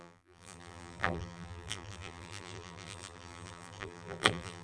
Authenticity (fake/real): fake